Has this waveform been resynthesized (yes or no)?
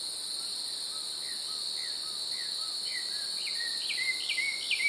no